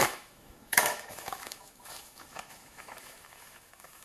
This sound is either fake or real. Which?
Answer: fake